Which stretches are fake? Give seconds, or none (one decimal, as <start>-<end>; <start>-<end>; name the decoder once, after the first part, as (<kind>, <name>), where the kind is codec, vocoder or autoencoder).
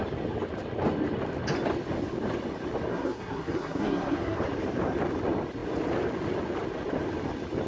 2.9-4.4 (codec, SNAC)